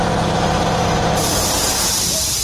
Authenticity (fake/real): fake